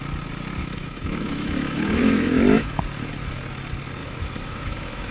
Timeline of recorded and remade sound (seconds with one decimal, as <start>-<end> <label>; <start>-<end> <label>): 0.0-0.6 recorded; 0.6-2.8 remade; 2.8-4.0 recorded; 4.0-5.1 remade